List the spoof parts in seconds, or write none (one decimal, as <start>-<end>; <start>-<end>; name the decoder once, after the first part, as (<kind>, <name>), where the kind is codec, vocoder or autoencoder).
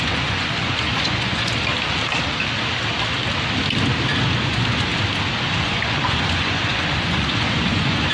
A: 0.0-1.5 (vocoder, Vocos); 4.4-4.9; 5.5-8.1